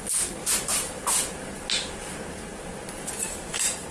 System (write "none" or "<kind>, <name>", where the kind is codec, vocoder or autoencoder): none